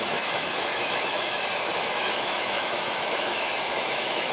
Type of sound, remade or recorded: remade